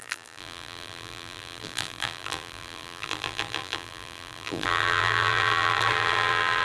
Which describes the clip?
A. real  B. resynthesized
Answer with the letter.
B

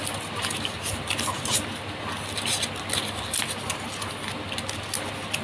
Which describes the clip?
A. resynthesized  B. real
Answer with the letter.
B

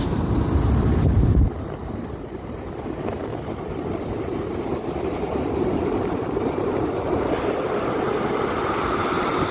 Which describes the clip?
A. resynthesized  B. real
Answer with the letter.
A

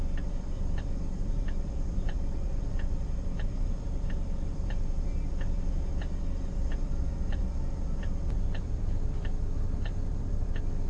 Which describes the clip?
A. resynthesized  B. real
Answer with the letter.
A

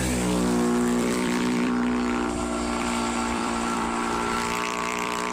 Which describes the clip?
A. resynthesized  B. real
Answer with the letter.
A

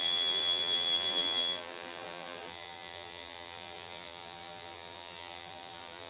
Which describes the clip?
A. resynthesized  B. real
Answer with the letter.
A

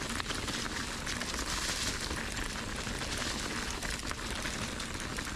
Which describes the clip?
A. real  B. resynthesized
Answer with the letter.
A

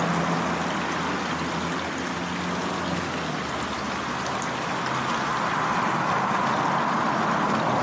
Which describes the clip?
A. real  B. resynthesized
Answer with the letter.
A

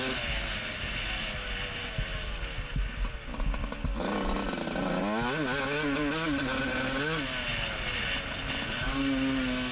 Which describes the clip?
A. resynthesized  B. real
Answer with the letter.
B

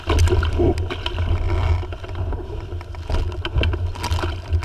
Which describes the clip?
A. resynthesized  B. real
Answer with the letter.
B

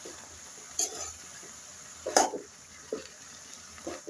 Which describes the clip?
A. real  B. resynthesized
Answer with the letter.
B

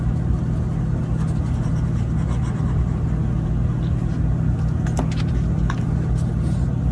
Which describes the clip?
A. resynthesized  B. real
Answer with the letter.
B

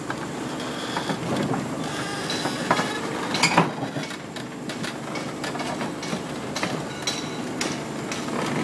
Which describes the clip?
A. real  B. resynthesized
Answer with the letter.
A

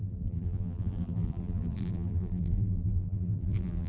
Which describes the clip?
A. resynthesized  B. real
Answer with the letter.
A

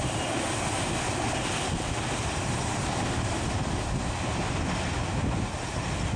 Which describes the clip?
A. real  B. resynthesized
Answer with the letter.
A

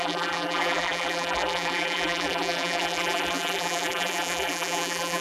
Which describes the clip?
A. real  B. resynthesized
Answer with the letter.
B